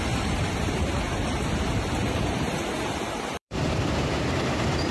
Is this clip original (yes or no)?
no